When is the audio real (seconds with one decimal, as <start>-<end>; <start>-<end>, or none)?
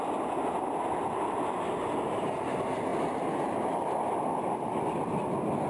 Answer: 2.9-4.0